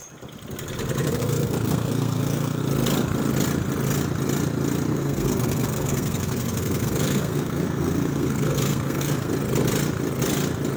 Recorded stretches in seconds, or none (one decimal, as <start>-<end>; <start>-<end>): 0.0-1.0; 2.6-4.9; 9.3-10.8